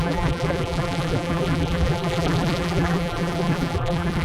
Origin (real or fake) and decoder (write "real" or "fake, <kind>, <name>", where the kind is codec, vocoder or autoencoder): fake, vocoder, BigVGAN v2